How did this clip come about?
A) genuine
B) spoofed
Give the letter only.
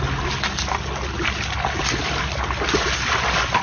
A